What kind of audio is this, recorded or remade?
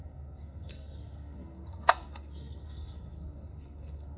remade